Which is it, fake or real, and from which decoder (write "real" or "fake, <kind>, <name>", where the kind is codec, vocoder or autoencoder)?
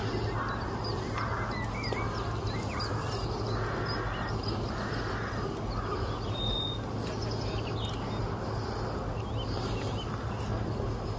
real